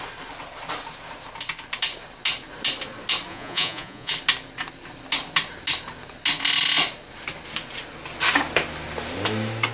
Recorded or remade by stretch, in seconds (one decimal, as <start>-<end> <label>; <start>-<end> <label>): 0.0-3.3 recorded; 3.3-4.1 remade; 4.1-9.7 recorded